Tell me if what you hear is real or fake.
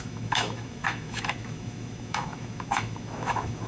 fake